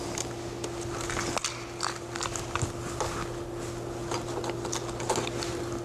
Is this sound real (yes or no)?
yes